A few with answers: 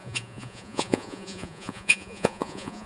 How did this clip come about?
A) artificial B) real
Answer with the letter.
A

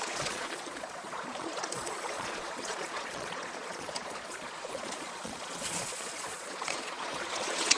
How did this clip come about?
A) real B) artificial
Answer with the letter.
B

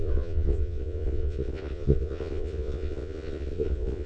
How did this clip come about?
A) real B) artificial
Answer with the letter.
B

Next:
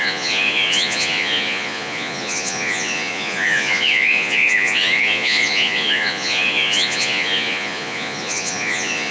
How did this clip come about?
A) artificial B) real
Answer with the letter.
A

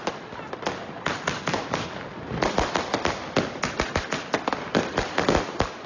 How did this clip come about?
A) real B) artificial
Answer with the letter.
A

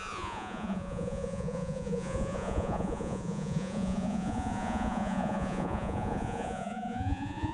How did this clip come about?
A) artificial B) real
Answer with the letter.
A